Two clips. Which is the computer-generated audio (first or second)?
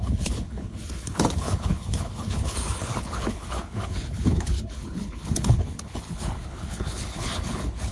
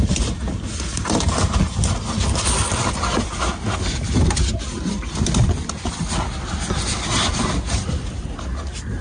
first